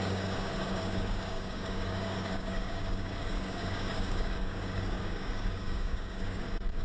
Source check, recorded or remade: remade